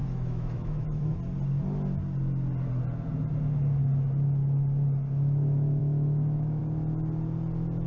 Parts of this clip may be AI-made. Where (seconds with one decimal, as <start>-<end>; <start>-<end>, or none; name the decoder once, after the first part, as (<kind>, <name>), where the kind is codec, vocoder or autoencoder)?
0.0-1.2 (autoencoder, DAC-VAE); 5.8-6.6